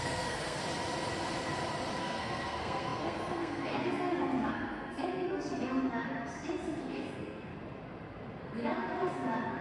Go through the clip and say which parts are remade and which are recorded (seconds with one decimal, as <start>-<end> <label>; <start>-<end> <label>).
0.0-0.6 remade; 0.6-2.0 recorded; 2.0-7.5 remade; 7.5-8.4 recorded; 8.4-9.6 remade